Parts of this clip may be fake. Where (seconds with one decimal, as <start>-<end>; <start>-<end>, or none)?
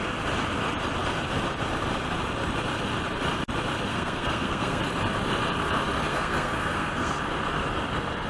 3.9-4.8; 6.1-7.1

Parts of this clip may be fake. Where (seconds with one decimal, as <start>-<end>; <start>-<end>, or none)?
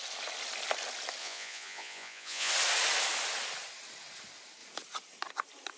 1.2-2.5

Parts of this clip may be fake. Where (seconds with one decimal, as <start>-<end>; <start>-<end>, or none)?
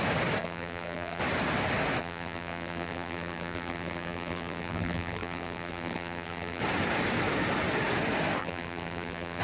0.4-1.2; 2.0-6.6; 8.4-9.4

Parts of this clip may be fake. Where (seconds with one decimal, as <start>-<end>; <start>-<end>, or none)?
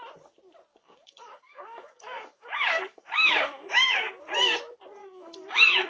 0.7-4.2; 5.0-5.9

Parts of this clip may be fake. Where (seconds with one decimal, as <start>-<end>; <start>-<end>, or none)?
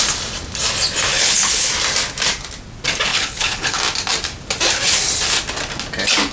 1.1-1.7; 3.1-3.8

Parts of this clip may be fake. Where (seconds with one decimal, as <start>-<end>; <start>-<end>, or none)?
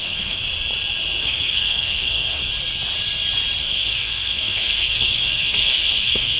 0.0-0.4; 1.2-2.5; 3.6-6.4